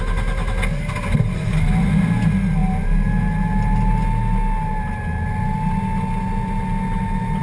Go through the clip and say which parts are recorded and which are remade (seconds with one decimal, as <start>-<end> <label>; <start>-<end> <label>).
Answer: 0.0-7.4 recorded